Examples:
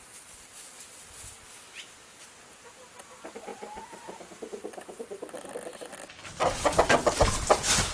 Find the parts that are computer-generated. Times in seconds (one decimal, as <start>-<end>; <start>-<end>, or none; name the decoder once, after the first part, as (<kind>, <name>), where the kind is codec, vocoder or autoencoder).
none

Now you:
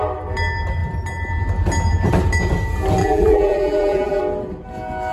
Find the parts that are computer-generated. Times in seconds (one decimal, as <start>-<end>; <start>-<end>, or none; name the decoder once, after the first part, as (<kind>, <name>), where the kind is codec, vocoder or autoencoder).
3.0-4.2 (vocoder, BigVGAN v2)

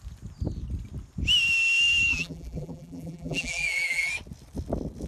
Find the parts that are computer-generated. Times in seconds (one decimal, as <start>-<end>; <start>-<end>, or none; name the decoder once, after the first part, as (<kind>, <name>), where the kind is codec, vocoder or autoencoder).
2.1-4.1 (vocoder, BigVGAN v2)

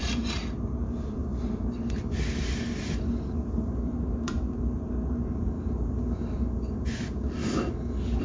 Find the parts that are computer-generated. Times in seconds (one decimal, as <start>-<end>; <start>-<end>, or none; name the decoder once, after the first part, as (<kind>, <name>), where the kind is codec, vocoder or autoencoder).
0.0-7.4 (vocoder, BigVGAN v2)